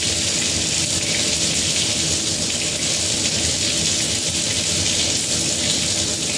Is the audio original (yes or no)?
yes